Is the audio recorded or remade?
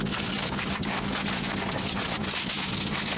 recorded